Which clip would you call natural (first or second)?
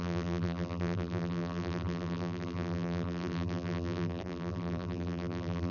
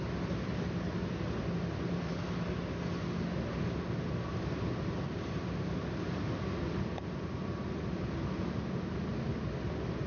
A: second